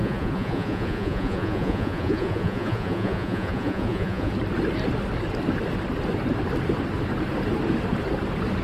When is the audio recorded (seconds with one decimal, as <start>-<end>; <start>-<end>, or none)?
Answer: 4.3-8.6